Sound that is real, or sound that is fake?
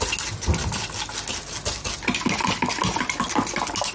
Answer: real